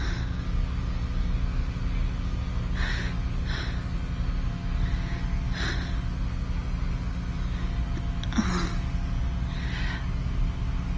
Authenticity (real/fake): real